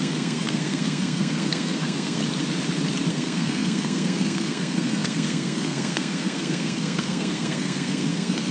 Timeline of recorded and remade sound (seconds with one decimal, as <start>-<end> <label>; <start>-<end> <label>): 0.0-2.2 remade; 2.2-3.1 recorded; 3.1-8.5 remade